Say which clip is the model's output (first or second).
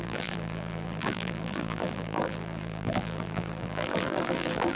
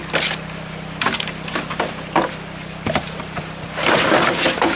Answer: first